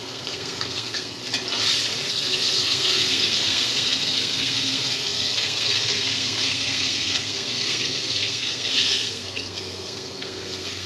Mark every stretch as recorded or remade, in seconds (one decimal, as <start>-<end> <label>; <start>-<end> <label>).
0.0-1.2 remade; 1.2-2.1 recorded; 2.1-10.9 remade